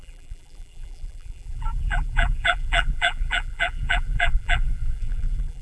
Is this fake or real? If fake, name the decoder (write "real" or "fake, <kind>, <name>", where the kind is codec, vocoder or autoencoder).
fake, vocoder, BigVGAN v2